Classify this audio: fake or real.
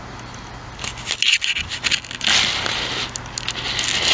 real